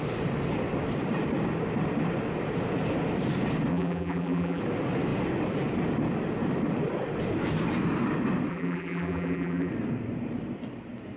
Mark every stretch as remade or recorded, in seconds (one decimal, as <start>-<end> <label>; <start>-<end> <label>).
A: 0.0-3.7 recorded; 3.7-4.6 remade; 4.6-8.5 recorded; 8.5-9.7 remade; 9.7-11.2 recorded